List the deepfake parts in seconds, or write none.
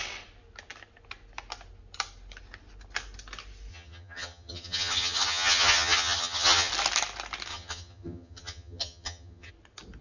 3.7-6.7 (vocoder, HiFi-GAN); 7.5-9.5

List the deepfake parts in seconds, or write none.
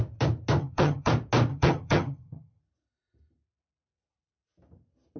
0.6-1.1 (vocoder, HiFi-GAN); 1.5-2.6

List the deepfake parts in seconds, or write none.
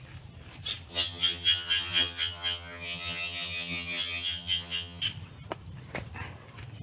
0.9-5.0 (vocoder, HiFi-GAN)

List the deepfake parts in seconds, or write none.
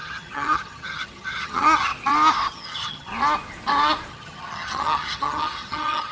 0.0-1.9 (vocoder, HiFi-GAN); 2.5-3.1; 4.1-6.1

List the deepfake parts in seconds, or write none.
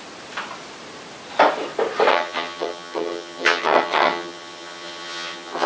2.1-5.7 (vocoder, HiFi-GAN)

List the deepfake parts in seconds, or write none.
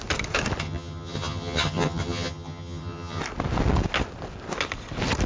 0.6-3.2 (vocoder, HiFi-GAN)